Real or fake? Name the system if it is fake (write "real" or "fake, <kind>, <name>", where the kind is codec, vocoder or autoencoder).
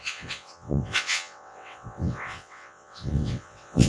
fake, vocoder, WaveNeXt